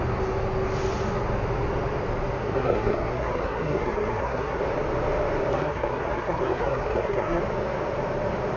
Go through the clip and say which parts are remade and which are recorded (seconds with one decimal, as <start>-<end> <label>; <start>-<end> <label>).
0.0-2.4 recorded; 2.4-4.6 remade; 4.6-5.5 recorded; 5.5-7.4 remade; 7.4-8.6 recorded

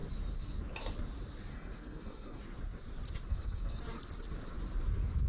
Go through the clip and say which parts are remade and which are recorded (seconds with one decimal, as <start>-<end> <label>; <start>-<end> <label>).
0.0-1.5 recorded; 1.5-2.4 remade; 2.4-3.3 recorded; 3.3-3.8 remade; 3.8-5.3 recorded